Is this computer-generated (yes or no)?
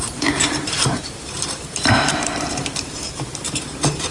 yes